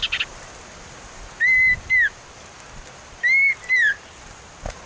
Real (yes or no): yes